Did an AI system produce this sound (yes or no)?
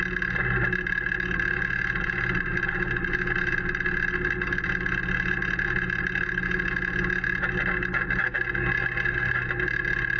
no